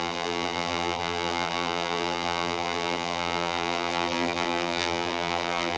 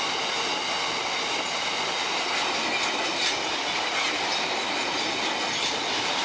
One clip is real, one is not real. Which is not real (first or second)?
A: first